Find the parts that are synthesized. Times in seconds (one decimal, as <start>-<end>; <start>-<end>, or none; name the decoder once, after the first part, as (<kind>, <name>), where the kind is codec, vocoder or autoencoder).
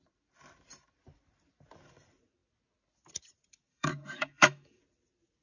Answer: 3.7-4.8 (autoencoder, DAC-VAE)